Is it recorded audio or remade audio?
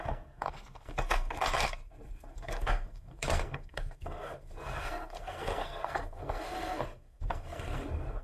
remade